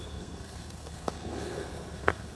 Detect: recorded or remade remade